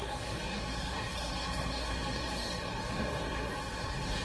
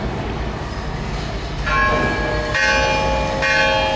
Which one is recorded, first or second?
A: second